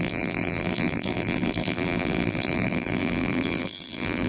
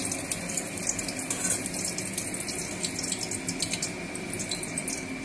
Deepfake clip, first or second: first